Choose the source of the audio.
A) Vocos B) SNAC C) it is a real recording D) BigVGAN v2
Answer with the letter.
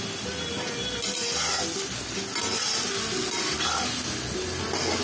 C